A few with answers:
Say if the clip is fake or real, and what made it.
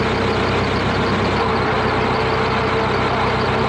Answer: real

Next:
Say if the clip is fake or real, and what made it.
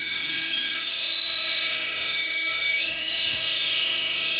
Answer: fake, autoencoder, DAC-VAE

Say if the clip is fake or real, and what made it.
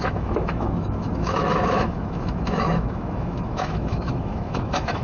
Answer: fake, autoencoder, DAC-VAE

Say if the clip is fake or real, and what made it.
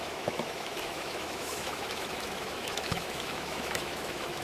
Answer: fake, autoencoder, DAC-VAE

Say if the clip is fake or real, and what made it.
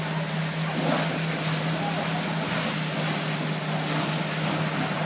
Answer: real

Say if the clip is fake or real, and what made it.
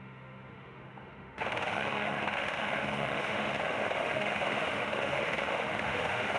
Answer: fake, autoencoder, DAC-VAE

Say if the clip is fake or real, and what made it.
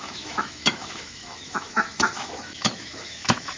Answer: fake, autoencoder, DAC-VAE